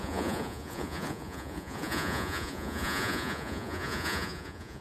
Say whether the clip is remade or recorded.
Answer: remade